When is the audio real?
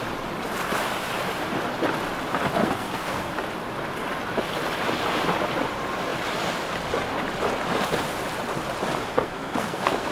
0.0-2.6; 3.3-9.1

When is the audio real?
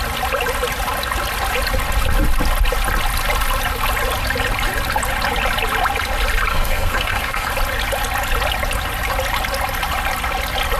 0.0-6.5; 7.5-10.8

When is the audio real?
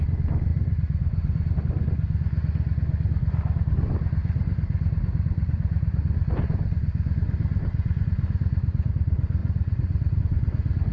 0.0-0.5; 1.6-4.2; 8.9-9.4; 10.2-10.9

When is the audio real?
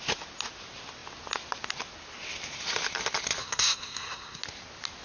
0.0-3.4; 4.4-5.0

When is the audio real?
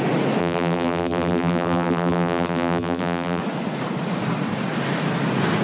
0.0-0.4; 3.4-5.6